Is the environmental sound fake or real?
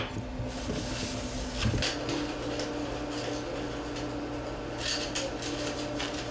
real